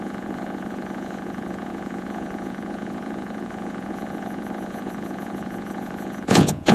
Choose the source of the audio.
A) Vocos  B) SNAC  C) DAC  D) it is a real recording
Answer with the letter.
A